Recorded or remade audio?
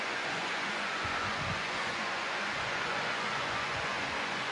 remade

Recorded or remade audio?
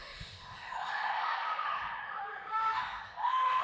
remade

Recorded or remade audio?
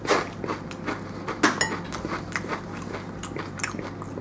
recorded